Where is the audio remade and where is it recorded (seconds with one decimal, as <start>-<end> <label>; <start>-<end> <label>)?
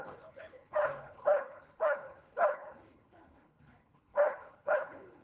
0.0-5.2 remade